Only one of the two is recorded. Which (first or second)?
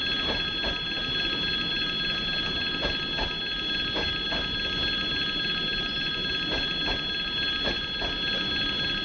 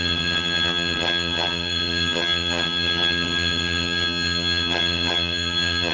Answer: first